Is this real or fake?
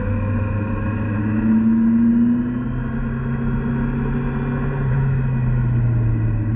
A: real